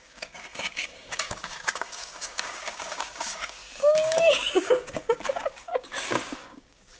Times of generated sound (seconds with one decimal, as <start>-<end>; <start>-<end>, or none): 0.0-7.0